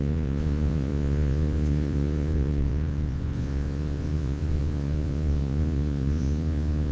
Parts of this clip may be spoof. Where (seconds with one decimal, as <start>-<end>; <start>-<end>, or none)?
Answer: 0.0-6.9